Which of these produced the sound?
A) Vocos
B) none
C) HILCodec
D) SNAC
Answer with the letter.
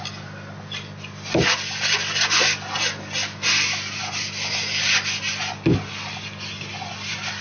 B